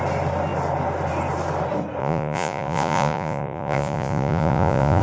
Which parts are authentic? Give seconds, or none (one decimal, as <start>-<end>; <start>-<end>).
0.0-2.0